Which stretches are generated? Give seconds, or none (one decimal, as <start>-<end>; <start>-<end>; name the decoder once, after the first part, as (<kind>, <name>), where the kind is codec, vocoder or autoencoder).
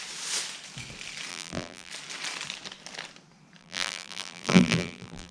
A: 1.3-1.9 (vocoder, BigVGAN v2); 3.6-5.3